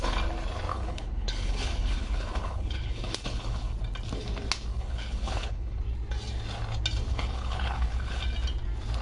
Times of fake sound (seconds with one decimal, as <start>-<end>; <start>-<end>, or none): 0.7-3.7; 4.7-5.8; 7.1-8.2